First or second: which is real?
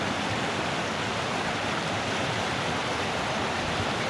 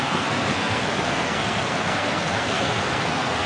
first